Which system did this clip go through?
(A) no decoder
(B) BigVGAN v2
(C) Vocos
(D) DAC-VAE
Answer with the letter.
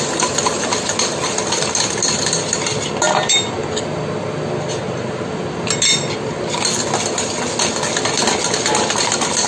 A